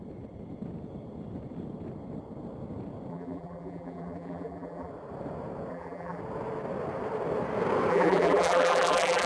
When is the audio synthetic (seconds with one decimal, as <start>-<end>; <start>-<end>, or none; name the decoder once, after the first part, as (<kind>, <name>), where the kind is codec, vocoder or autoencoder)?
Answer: 3.1-4.9 (vocoder, BigVGAN v2); 5.7-6.2; 7.9-9.3